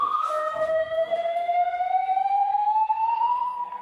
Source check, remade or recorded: remade